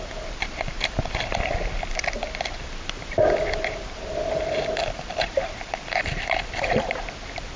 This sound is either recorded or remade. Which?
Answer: remade